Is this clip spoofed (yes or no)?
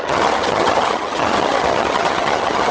yes